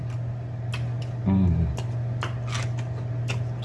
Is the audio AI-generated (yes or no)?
no